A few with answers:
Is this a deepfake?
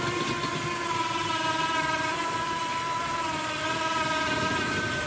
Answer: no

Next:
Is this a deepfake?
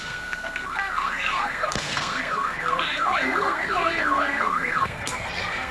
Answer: yes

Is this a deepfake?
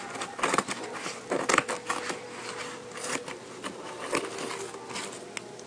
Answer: no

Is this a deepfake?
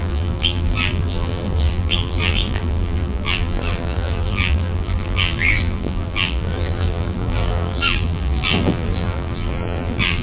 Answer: yes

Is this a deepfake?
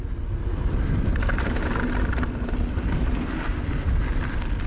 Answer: no